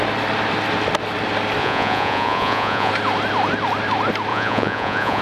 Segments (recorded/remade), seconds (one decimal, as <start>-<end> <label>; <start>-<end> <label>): 0.0-1.6 recorded; 1.6-2.9 remade; 2.9-4.3 recorded; 4.3-5.2 remade